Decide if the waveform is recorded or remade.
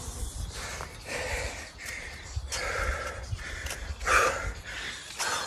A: remade